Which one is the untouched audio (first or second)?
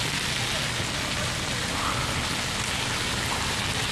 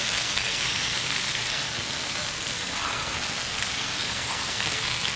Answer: first